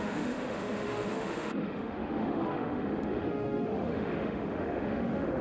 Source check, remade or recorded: remade